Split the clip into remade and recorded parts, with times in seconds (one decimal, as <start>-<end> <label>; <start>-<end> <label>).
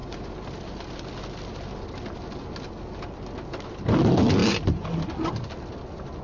0.0-6.2 recorded